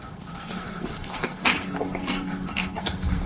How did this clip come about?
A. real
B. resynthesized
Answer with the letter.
B